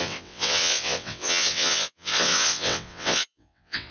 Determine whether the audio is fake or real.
fake